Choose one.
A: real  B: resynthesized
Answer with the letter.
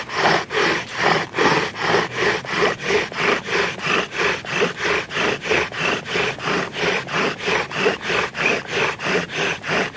A